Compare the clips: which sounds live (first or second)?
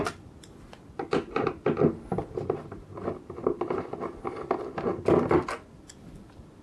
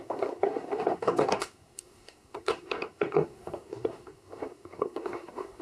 first